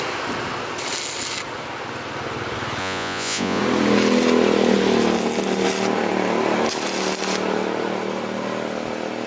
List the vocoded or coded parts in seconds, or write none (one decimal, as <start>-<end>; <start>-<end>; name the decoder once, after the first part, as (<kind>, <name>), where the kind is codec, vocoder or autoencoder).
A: 2.8-3.6 (vocoder, Vocos)